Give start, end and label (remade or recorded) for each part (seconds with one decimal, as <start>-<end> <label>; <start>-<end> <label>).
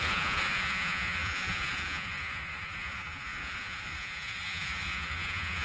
0.0-5.6 remade